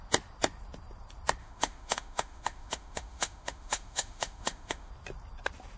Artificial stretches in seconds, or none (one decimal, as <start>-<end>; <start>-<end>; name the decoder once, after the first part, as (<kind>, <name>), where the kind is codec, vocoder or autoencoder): 1.4-4.9 (autoencoder, DAC-VAE)